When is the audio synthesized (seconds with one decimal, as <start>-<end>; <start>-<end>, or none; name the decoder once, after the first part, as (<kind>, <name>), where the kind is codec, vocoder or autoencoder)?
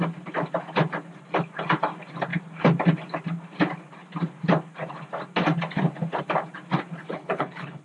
7.0-7.8 (codec, HILCodec)